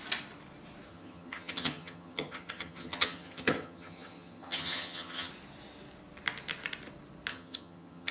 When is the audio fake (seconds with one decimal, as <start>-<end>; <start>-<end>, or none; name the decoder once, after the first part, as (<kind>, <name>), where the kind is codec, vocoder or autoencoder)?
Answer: 0.9-5.3 (vocoder, HiFi-GAN); 7.3-8.1